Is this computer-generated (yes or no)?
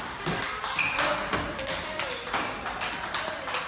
no